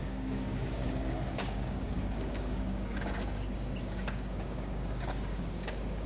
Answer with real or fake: fake